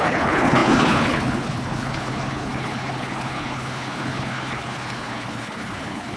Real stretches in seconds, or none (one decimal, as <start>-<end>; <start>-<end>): none